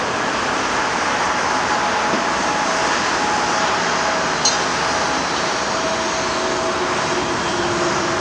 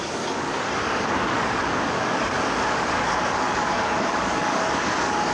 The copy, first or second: second